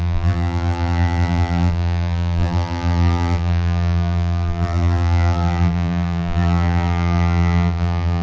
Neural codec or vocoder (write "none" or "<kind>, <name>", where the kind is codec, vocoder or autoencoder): vocoder, BigVGAN v2